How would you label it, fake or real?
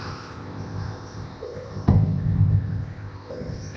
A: fake